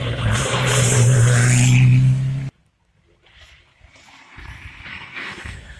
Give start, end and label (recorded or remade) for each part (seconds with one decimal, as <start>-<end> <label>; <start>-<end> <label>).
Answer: 0.0-4.9 recorded; 4.9-5.8 remade